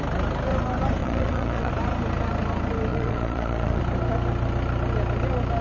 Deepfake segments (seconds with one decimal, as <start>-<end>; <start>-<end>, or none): 1.0-1.7; 2.9-3.8